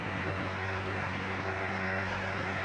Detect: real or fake fake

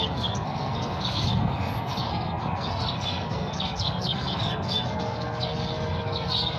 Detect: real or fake fake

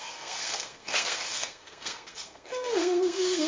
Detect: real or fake fake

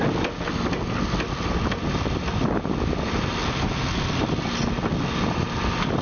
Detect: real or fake real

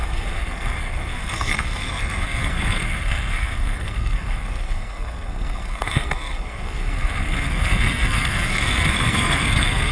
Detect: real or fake fake